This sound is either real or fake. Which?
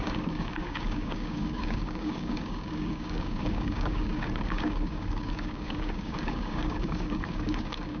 fake